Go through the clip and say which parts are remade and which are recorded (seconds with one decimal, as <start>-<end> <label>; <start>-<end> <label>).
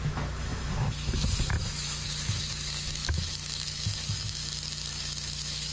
0.0-4.4 remade; 4.4-4.9 recorded; 4.9-5.7 remade